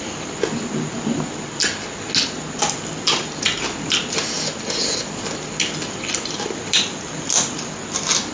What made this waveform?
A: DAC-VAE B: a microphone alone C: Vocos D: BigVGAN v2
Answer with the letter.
B